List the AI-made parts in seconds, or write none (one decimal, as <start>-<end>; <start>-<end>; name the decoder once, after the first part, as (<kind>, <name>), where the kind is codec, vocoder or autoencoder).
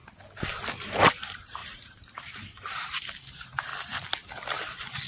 0.9-3.7 (vocoder, BigVGAN v2)